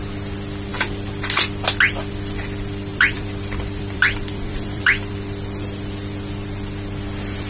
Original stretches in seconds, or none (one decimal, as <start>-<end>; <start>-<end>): 0.0-2.9; 5.1-7.5